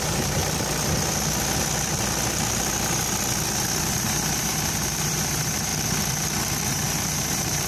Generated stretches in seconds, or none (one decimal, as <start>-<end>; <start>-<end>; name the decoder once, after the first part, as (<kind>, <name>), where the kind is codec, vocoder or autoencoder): 0.0-0.4 (vocoder, BigVGAN v2); 3.8-5.7; 6.7-7.7